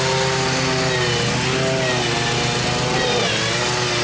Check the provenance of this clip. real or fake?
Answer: real